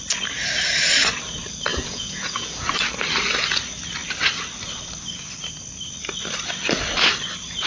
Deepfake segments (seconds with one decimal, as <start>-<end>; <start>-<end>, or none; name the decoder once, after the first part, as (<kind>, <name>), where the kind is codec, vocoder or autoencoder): 1.7-2.6 (vocoder, Vocos)